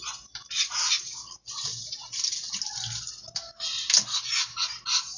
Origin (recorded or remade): recorded